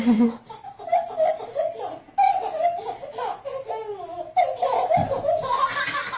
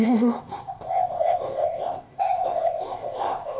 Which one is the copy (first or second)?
second